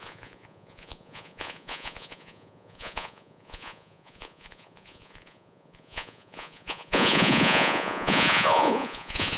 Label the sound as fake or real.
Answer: fake